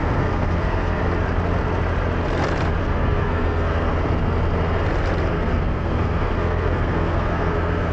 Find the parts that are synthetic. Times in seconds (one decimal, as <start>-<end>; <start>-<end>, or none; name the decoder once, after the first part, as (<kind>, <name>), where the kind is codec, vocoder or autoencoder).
0.0-1.0 (codec, SNAC); 2.8-3.9; 5.3-7.9